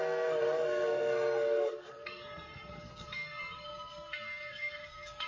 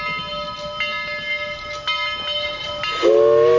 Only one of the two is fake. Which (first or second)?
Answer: first